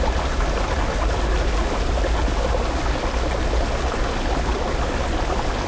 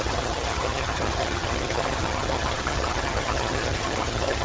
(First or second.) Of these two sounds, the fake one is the second